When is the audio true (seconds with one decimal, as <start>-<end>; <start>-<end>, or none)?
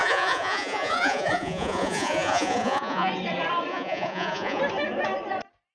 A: 3.1-3.7; 4.6-5.7